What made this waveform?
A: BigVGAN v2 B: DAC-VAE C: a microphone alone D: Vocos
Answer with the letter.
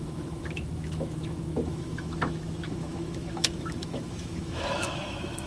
B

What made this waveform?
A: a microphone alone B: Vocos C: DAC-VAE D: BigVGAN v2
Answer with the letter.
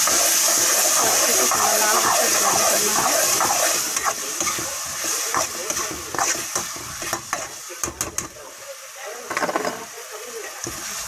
A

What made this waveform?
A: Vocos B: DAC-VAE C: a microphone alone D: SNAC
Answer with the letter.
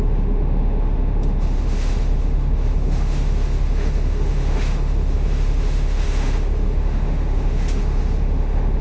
B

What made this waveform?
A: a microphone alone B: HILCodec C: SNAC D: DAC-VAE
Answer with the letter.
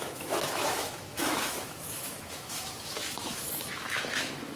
D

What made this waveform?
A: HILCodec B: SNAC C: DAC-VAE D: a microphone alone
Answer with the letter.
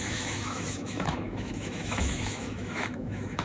C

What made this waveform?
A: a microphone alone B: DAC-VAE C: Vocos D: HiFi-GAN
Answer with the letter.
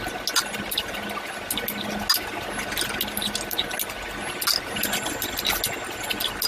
A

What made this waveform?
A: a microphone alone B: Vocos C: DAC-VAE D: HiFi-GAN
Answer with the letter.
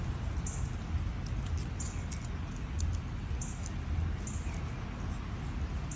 A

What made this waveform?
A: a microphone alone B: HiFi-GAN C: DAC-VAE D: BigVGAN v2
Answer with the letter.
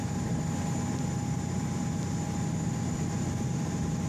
A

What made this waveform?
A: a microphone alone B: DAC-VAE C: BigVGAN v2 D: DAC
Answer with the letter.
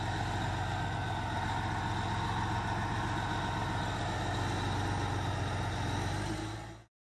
A